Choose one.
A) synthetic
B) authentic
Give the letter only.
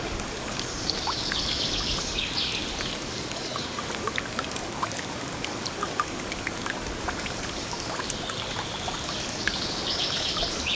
A